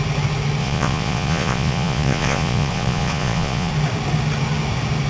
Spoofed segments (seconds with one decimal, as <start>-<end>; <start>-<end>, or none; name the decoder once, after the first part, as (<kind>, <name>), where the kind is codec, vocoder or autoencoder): 0.6-3.7 (vocoder, Vocos)